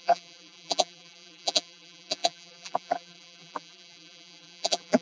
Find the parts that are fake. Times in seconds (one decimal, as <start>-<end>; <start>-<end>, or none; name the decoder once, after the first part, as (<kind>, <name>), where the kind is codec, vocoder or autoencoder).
0.0-5.0 (vocoder, BigVGAN v2)